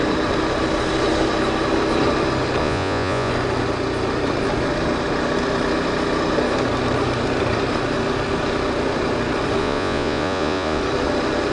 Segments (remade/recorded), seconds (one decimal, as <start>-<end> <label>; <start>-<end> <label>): 0.0-2.6 recorded; 2.6-3.3 remade; 3.3-9.6 recorded; 9.6-10.8 remade; 10.8-11.5 recorded